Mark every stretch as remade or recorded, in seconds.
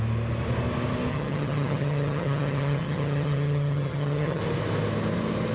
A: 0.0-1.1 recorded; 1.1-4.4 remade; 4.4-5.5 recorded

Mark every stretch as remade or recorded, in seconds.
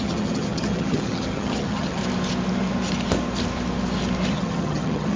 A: 0.0-2.0 remade; 2.0-4.3 recorded; 4.3-5.2 remade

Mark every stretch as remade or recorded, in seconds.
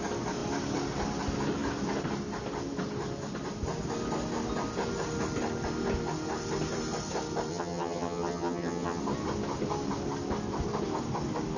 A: 0.0-7.5 recorded; 7.5-9.0 remade; 9.0-11.6 recorded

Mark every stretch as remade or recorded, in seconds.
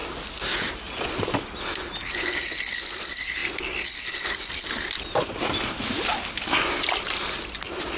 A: 0.0-8.0 recorded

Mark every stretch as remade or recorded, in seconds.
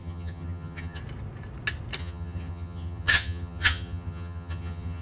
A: 0.0-1.0 remade; 1.0-2.0 recorded; 2.0-5.0 remade